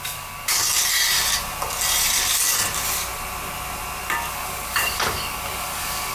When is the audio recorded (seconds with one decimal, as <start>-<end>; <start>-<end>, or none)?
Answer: 0.6-4.3